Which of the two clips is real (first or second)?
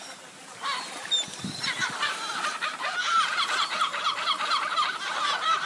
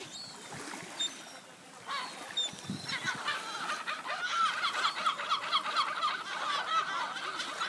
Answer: second